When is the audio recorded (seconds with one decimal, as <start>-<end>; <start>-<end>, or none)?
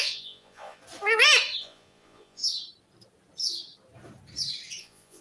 0.8-1.6; 2.4-4.8